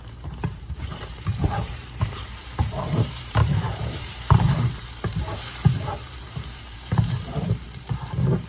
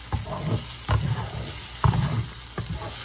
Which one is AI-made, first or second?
first